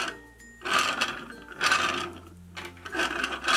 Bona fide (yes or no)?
yes